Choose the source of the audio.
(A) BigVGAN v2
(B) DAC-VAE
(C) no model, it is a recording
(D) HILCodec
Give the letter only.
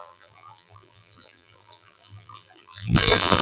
A